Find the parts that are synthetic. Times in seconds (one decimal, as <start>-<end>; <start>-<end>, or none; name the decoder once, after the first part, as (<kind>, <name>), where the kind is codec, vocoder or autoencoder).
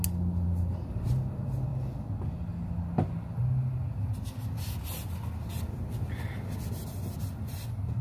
none